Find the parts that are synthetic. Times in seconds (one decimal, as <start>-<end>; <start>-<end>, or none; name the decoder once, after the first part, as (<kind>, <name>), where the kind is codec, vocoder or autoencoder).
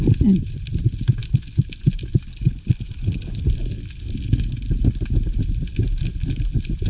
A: 2.3-3.5 (codec, HILCodec)